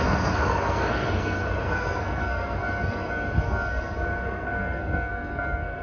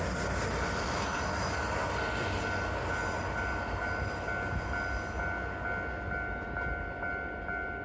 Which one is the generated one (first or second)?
first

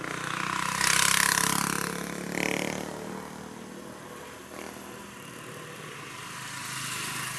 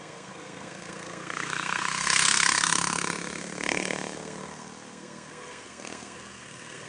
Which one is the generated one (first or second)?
second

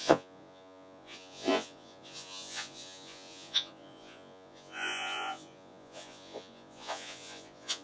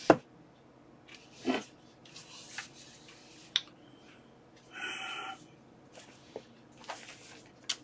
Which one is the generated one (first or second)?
first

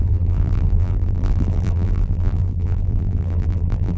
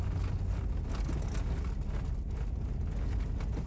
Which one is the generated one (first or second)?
first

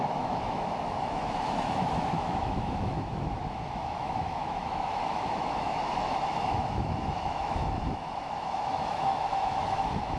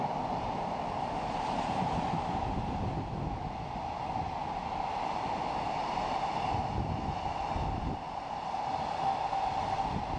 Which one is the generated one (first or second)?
first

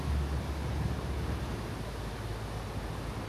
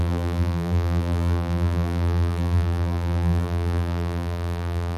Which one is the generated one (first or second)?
second